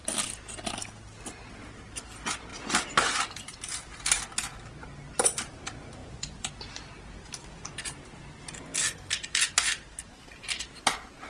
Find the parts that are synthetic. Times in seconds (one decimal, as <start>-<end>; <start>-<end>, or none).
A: 6.0-6.5